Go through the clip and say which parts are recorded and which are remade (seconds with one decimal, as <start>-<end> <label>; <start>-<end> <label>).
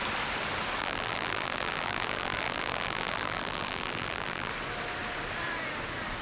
0.0-0.8 recorded; 0.8-4.5 remade; 4.5-6.2 recorded